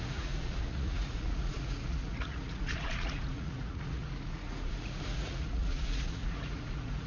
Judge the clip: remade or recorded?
remade